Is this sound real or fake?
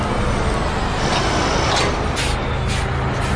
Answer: real